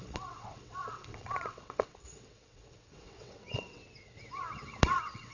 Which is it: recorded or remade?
remade